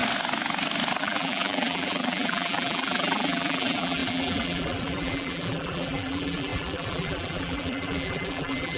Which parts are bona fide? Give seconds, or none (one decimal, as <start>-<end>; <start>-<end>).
0.0-1.0